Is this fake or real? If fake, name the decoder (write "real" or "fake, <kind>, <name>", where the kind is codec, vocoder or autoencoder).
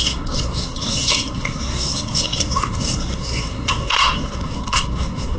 fake, codec, SNAC